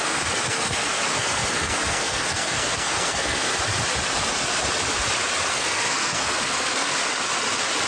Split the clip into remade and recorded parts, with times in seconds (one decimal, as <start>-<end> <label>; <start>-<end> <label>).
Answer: 0.0-3.5 remade; 3.5-5.5 recorded; 5.5-7.0 remade; 7.0-7.9 recorded